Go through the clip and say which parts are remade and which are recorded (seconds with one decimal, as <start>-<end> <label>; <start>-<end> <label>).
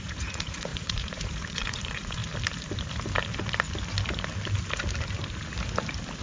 0.0-2.2 remade; 2.2-6.2 recorded